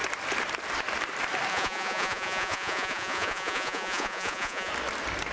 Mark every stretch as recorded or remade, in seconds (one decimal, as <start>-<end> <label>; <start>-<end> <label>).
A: 0.0-1.5 recorded; 1.5-4.7 remade; 4.7-5.3 recorded